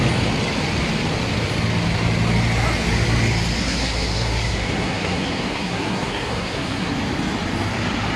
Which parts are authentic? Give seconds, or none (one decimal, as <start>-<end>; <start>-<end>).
0.0-3.6; 6.9-8.2